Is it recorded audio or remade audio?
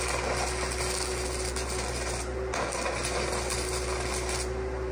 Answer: recorded